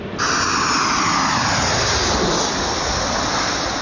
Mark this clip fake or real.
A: real